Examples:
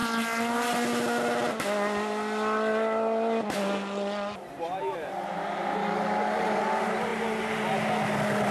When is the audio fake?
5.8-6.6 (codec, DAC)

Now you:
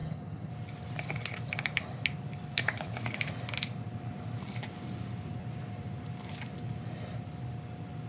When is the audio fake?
0.0-0.5 (vocoder, HiFi-GAN)

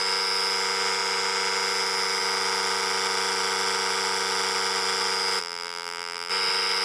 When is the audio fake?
5.4-6.3 (vocoder, BigVGAN v2)

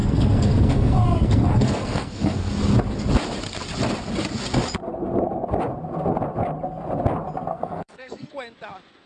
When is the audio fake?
0.0-2.5 (codec, SNAC); 7.5-8.3